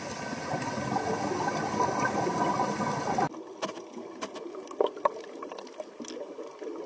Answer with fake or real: real